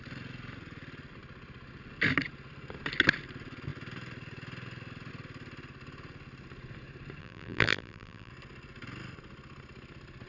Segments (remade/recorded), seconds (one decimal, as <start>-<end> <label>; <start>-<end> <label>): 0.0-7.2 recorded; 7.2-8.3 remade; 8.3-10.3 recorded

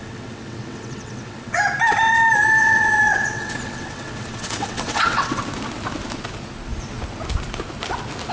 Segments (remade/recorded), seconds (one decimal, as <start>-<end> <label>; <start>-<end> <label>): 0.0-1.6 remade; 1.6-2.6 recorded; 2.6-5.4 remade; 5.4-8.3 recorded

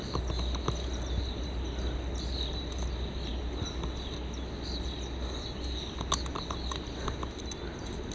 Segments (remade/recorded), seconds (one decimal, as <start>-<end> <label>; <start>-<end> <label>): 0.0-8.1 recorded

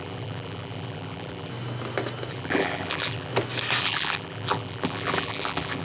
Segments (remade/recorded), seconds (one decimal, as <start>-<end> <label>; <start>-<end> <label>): 0.0-1.5 remade; 1.5-2.3 recorded; 2.3-3.3 remade; 3.3-3.8 recorded; 3.8-5.8 remade

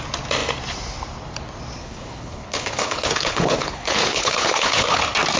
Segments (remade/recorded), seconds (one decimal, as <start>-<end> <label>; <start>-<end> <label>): 0.0-1.8 recorded; 1.8-5.0 remade; 5.0-5.4 recorded

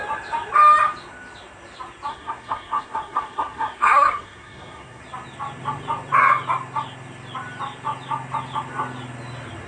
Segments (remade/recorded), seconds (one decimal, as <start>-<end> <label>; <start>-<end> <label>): 0.0-2.1 recorded; 2.1-5.0 remade; 5.0-9.7 recorded

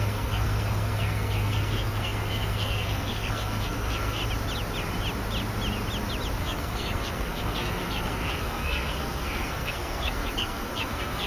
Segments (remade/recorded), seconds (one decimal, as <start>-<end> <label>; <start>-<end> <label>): 0.0-4.2 remade; 4.2-6.4 recorded; 6.4-11.3 remade